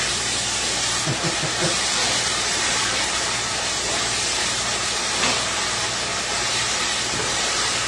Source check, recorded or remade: remade